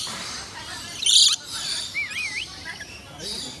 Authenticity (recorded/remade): remade